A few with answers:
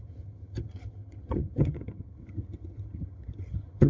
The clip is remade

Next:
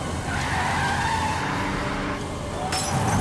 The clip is recorded